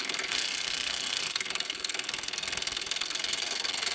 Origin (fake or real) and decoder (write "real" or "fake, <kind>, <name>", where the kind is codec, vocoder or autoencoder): fake, codec, SNAC